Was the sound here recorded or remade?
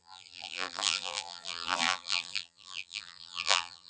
remade